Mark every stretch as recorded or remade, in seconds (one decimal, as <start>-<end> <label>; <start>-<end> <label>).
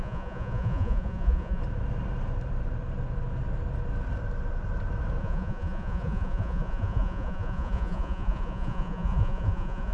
0.0-1.6 remade; 1.6-5.2 recorded; 5.2-9.9 remade